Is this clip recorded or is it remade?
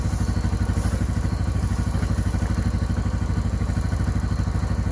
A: recorded